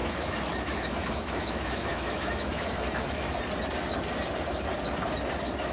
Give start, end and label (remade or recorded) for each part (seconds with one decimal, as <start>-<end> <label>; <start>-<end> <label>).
0.0-3.4 remade; 3.4-5.7 recorded